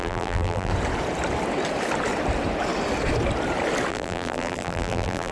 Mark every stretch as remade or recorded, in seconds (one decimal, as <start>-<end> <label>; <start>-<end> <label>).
0.0-0.7 remade; 0.7-3.9 recorded; 3.9-5.3 remade